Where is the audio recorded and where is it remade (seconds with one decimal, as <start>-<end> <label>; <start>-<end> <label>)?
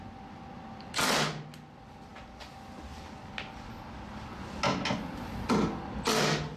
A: 0.0-6.6 recorded